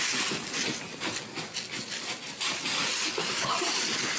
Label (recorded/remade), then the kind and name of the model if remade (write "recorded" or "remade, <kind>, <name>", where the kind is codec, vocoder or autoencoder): recorded